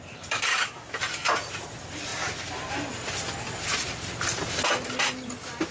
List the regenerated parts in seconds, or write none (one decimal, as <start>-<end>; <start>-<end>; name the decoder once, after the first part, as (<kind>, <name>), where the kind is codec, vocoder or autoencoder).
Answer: 0.5-1.0 (autoencoder, DAC-VAE)